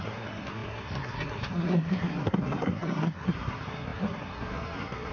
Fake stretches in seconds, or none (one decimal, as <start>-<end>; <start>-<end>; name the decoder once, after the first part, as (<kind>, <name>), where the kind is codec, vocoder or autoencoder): 0.0-5.1 (codec, SNAC)